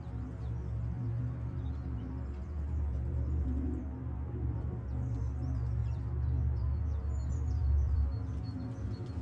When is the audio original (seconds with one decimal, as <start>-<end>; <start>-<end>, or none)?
none